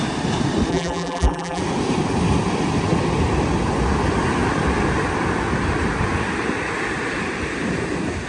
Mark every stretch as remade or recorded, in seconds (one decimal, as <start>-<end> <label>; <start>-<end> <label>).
0.0-0.7 recorded; 0.7-1.6 remade; 1.6-8.3 recorded